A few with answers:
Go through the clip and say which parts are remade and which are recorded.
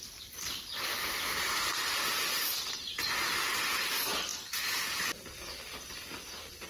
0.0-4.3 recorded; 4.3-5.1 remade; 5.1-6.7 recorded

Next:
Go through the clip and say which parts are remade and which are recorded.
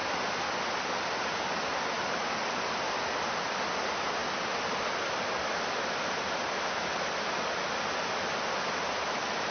0.0-9.5 recorded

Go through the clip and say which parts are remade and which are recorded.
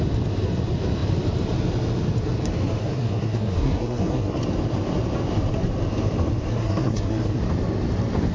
0.0-2.8 recorded; 2.8-4.4 remade; 4.4-6.5 recorded; 6.5-7.4 remade; 7.4-8.3 recorded